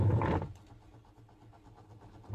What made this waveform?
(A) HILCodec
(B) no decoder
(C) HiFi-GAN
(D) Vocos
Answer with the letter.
B